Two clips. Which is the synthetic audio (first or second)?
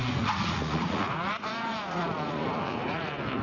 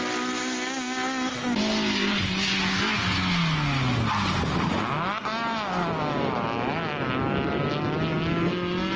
first